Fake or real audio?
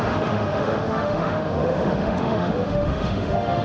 fake